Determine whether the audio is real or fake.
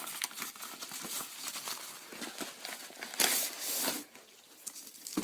real